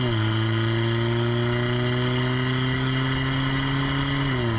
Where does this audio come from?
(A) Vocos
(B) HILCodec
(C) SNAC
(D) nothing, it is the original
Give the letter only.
D